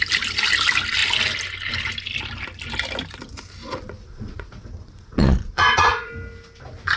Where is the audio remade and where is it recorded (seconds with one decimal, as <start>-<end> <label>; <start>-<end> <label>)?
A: 0.0-3.6 recorded; 3.6-6.1 remade; 6.1-7.0 recorded